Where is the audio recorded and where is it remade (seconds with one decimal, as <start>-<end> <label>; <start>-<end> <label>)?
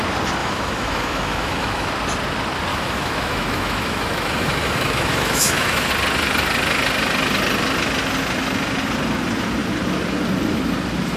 0.0-0.4 recorded; 0.4-1.9 remade; 1.9-2.7 recorded; 2.7-5.9 remade; 5.9-11.2 recorded